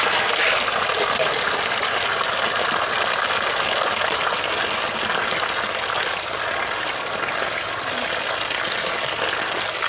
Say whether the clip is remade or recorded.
recorded